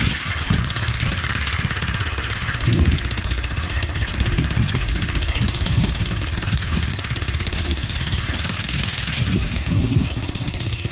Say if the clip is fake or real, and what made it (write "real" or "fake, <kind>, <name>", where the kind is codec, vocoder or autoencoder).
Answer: fake, codec, SNAC